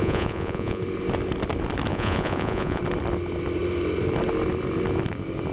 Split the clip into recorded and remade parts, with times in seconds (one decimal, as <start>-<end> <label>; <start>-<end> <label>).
0.0-0.8 remade; 0.8-1.9 recorded; 1.9-2.8 remade; 2.8-5.5 recorded